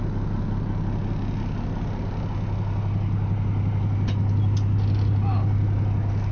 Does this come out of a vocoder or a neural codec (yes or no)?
no